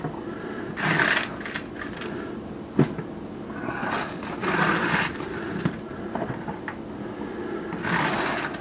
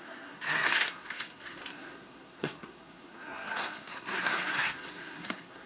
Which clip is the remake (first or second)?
second